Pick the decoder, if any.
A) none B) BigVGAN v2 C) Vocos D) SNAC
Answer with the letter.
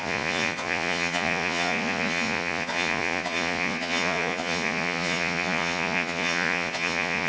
C